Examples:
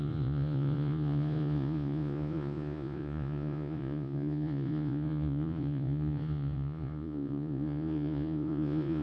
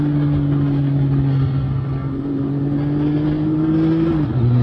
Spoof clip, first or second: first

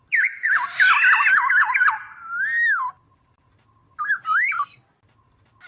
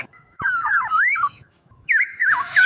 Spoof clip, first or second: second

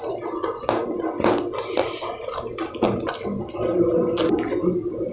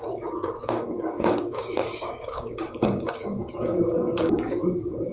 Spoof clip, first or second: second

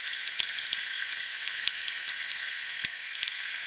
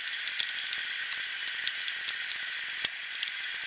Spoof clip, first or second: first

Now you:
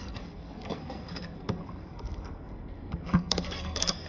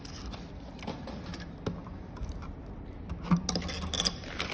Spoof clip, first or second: first